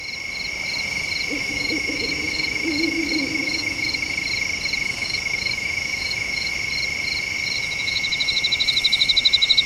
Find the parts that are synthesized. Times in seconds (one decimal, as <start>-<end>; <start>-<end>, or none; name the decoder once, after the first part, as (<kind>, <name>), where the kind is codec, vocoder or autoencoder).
1.4-4.1 (autoencoder, DAC-VAE); 5.0-6.5; 7.6-9.7

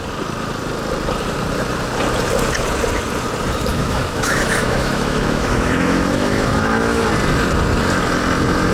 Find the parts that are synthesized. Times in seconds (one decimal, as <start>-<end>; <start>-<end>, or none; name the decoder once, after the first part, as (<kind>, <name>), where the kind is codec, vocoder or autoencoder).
3.7-7.0 (autoencoder, DAC-VAE)

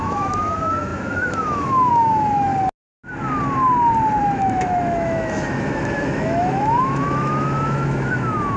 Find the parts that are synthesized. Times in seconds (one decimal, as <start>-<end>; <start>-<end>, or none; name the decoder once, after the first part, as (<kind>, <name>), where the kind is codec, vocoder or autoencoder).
0.0-2.5 (autoencoder, DAC-VAE); 4.2-8.6